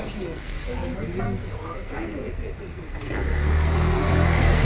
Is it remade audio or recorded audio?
remade